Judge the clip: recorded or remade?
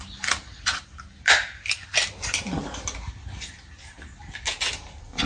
recorded